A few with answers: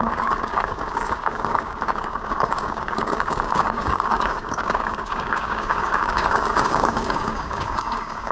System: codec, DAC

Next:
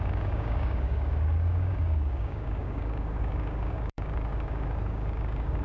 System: codec, DAC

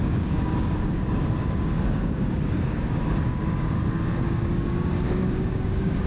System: codec, DAC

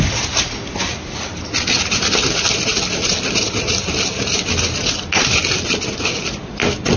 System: none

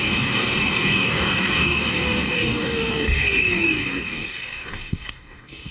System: codec, DAC